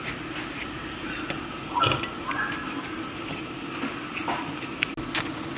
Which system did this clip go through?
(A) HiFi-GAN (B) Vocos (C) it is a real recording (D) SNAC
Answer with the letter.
C